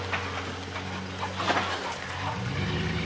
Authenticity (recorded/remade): recorded